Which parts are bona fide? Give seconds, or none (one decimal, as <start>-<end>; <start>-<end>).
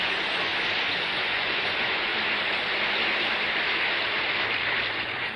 0.5-1.0; 2.1-4.9